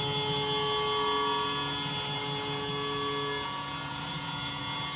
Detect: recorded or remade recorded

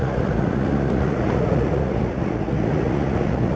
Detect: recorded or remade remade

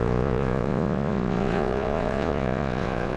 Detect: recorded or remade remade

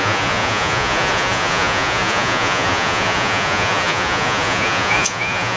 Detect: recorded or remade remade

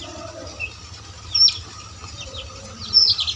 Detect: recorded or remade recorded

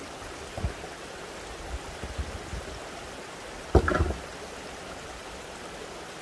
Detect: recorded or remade recorded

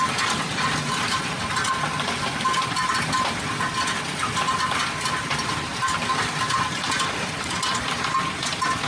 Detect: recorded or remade recorded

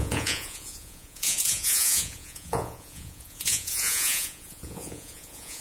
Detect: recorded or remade remade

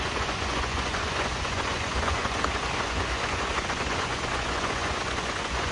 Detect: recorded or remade remade